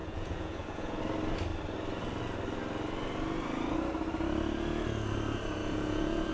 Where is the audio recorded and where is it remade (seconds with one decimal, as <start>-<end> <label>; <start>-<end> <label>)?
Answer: 0.0-1.0 remade; 1.0-5.6 recorded; 5.6-6.3 remade